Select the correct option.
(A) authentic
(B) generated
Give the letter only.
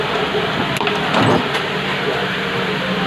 A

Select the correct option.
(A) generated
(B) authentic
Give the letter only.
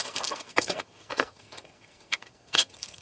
A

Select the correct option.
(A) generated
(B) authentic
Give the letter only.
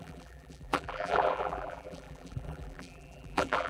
A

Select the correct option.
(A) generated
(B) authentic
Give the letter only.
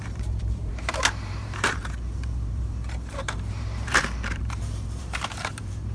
A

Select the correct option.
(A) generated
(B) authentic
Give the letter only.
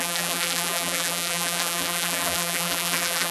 A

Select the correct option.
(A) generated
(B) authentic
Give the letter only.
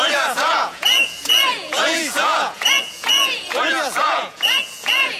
A